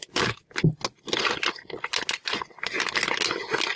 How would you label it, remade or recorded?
recorded